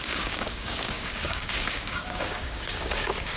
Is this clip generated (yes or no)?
yes